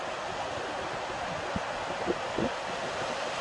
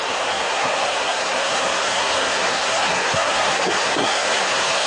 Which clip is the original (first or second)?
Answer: first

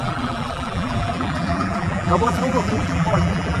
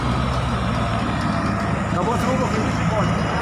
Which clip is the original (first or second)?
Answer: second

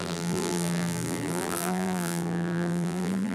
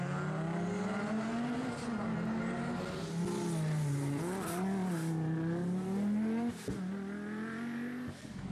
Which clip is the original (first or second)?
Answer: second